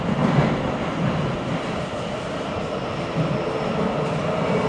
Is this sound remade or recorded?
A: recorded